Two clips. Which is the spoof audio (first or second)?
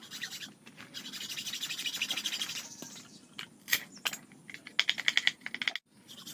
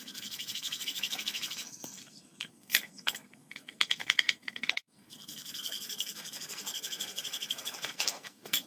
second